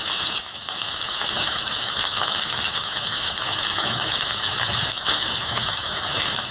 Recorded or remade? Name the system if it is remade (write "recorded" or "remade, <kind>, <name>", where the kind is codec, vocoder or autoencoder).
remade, autoencoder, DAC-VAE